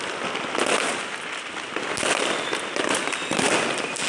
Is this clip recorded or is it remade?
recorded